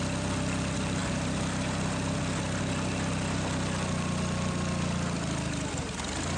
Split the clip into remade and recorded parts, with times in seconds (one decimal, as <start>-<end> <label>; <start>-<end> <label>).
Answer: 0.0-6.4 recorded